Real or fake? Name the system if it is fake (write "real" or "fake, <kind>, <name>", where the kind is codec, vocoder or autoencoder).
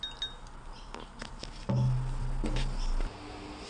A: real